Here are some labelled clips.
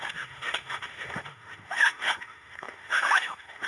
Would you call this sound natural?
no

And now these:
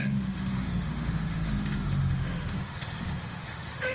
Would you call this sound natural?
no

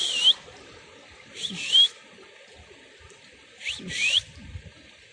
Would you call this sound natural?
no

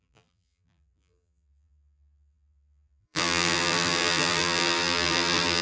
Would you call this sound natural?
no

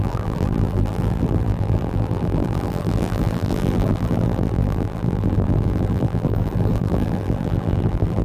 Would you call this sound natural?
no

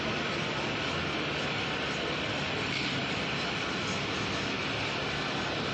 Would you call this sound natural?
yes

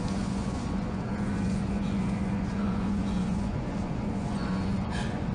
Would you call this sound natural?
no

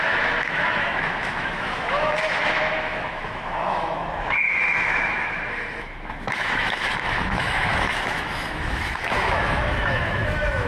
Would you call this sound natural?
no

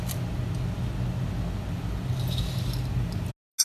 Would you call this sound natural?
yes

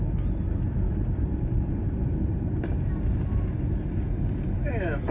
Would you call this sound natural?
yes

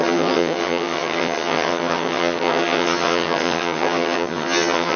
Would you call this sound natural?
no